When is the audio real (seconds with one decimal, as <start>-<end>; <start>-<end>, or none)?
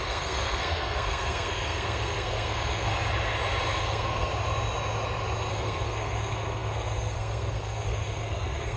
2.9-3.8; 4.3-5.5